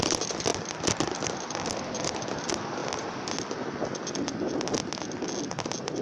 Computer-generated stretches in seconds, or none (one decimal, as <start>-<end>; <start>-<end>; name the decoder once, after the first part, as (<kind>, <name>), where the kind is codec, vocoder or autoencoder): 0.5-1.8 (vocoder, BigVGAN v2)